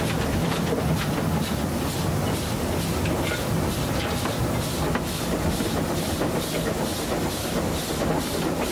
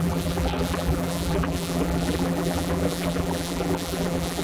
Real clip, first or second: first